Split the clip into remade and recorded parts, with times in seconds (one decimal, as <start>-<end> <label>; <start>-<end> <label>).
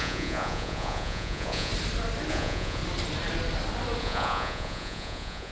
0.0-1.7 remade; 1.7-2.3 recorded; 2.3-2.8 remade; 2.8-4.0 recorded; 4.0-5.5 remade